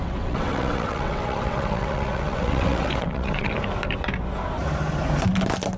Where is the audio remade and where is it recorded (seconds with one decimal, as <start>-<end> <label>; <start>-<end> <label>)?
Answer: 0.0-3.5 remade; 3.5-5.8 recorded